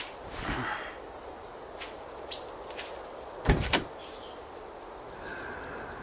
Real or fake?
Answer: real